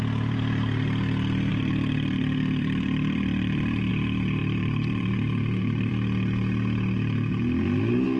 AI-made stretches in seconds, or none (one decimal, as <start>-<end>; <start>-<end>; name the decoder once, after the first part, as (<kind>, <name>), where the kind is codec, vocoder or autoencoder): 1.5-3.9 (vocoder, BigVGAN v2); 4.4-5.9